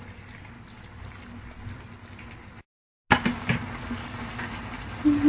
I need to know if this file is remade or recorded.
recorded